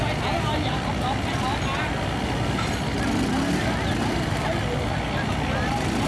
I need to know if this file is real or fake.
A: real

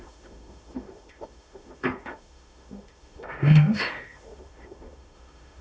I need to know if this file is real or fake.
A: fake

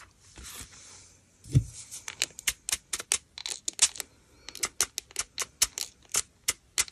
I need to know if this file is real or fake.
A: real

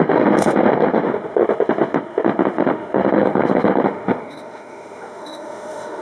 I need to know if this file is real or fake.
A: fake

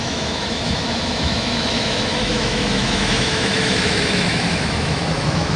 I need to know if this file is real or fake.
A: fake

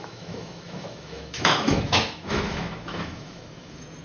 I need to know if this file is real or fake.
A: fake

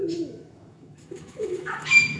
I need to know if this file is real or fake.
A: fake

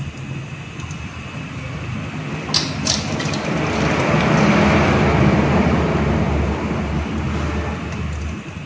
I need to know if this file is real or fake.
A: real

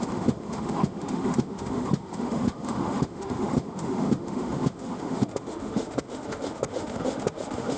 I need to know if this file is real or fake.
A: fake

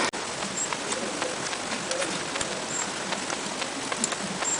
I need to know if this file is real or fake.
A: real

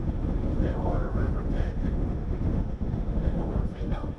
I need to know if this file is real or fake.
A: fake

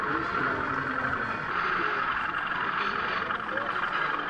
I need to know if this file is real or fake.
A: real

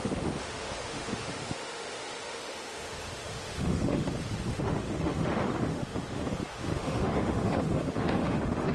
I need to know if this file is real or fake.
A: fake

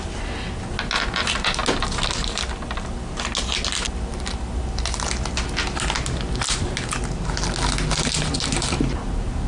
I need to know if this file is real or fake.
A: real